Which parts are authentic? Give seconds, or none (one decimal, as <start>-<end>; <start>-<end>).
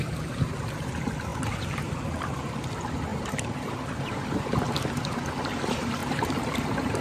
0.0-1.3; 1.9-3.1; 3.8-6.0